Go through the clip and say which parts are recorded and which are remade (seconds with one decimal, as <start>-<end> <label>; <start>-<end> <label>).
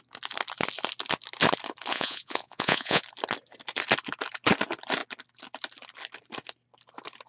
0.0-1.9 recorded; 1.9-3.0 remade; 3.0-7.3 recorded